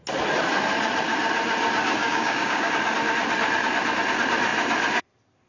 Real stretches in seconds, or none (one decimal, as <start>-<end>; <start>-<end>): 0.0-2.0; 2.7-5.5